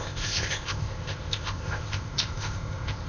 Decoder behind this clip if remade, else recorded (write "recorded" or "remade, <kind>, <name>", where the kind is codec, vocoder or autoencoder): remade, codec, ZipCodec